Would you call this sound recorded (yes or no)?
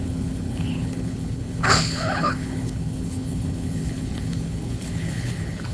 no